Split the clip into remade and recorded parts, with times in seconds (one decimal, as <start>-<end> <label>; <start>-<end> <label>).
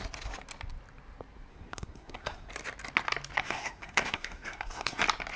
0.0-1.5 recorded; 1.5-2.5 remade; 2.5-3.4 recorded; 3.4-5.0 remade; 5.0-5.4 recorded